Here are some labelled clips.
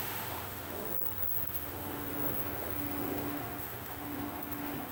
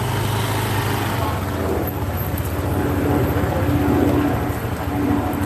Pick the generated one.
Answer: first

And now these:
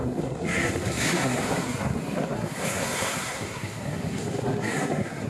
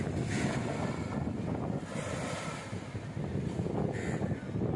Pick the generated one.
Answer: first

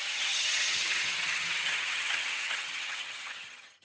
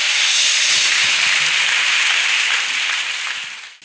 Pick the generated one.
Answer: first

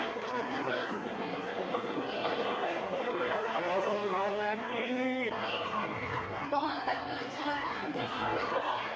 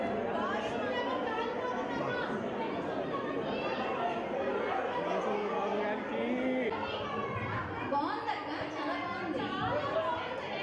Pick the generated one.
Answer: first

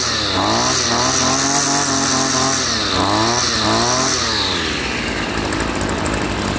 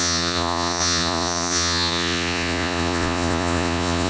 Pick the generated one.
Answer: second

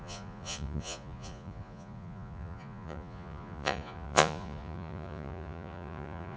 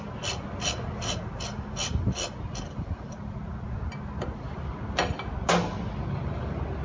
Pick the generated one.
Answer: first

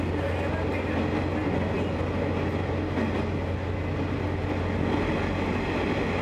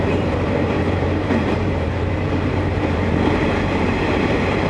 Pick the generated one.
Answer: second